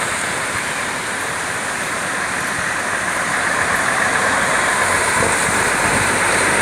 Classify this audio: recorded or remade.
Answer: remade